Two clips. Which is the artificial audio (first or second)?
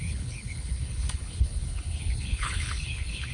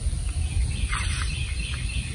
first